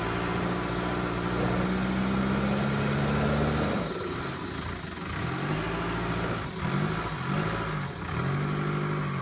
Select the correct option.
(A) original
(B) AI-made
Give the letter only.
A